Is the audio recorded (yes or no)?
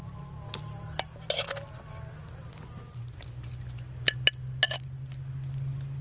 yes